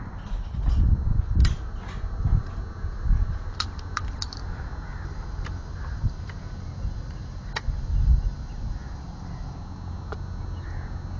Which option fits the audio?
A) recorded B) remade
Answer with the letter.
A